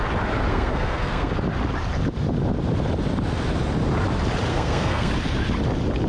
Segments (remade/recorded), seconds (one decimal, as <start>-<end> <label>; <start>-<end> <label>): 0.0-0.5 recorded; 0.5-1.3 remade; 1.3-4.5 recorded; 4.5-5.1 remade; 5.1-6.1 recorded